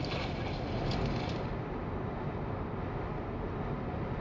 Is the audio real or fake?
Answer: real